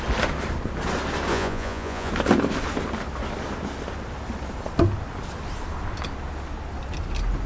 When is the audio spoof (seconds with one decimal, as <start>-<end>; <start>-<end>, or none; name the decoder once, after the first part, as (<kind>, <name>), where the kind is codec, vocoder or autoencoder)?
1.3-2.1 (vocoder, Vocos)